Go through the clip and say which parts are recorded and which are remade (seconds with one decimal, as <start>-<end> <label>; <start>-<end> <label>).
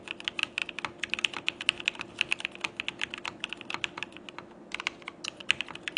0.0-6.0 recorded